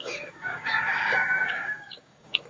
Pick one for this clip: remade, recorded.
remade